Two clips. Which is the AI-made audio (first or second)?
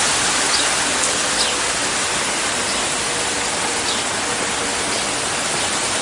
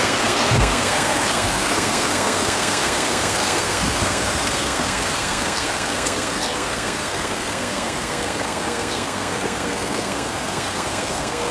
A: second